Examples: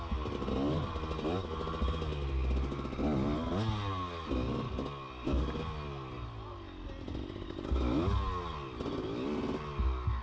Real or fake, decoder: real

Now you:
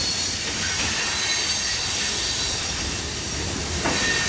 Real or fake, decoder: real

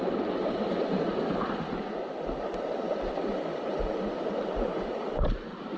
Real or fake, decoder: real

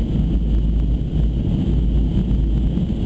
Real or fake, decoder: real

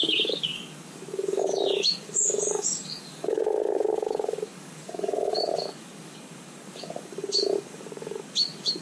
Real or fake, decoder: fake, codec, DAC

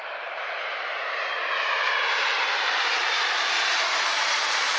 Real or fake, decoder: real